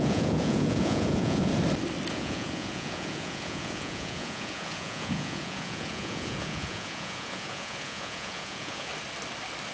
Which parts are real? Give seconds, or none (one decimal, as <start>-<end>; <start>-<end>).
1.5-2.1; 8.9-9.7